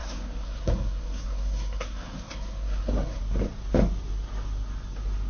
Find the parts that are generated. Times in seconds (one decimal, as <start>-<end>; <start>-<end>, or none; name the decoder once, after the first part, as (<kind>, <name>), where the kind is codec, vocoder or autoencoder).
0.0-3.2 (codec, SNAC)